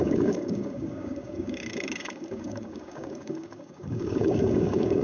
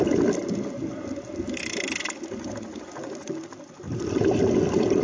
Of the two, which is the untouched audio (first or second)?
second